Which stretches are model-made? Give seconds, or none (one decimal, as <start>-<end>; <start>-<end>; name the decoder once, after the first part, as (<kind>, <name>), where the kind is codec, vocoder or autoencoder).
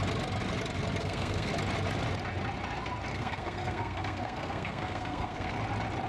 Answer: 1.0-1.5 (codec, SNAC); 3.1-5.6